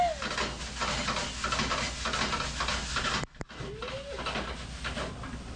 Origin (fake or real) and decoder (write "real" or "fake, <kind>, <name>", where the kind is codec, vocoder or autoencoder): real